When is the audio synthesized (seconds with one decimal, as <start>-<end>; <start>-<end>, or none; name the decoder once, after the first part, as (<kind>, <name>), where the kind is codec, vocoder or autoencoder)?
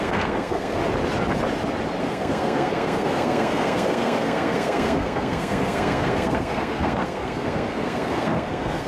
0.0-0.8 (codec, SNAC); 2.0-8.9